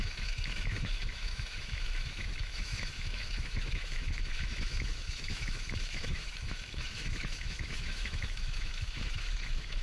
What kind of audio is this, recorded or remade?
remade